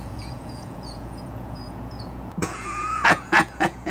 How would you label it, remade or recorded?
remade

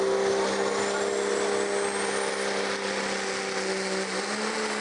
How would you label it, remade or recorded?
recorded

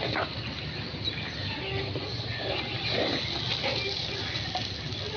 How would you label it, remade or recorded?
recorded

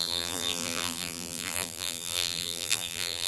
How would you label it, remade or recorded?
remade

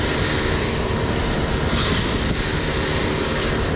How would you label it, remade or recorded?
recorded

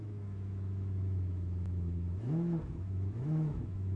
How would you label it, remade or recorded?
remade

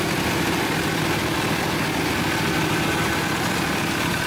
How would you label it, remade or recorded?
recorded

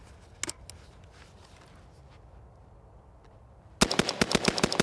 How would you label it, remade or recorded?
recorded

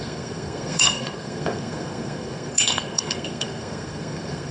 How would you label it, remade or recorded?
remade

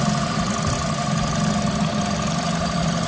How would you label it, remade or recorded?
recorded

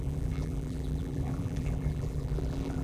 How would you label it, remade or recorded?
remade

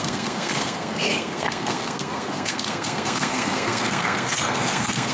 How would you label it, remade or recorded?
remade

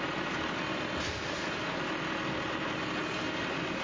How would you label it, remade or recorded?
recorded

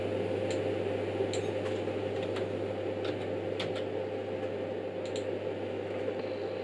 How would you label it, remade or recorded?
recorded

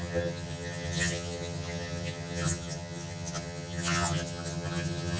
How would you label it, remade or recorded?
remade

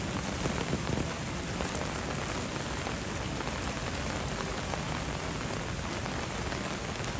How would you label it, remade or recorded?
recorded